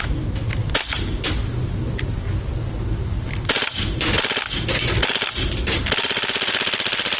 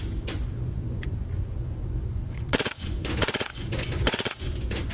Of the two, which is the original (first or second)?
first